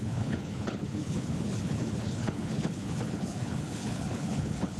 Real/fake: fake